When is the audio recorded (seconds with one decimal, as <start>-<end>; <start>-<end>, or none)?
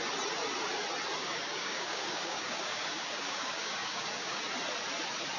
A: 0.0-1.2; 4.4-5.4